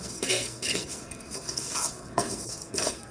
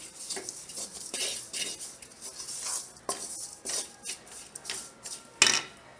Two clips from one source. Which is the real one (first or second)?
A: second